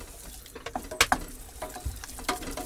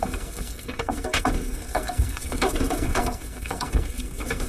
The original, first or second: first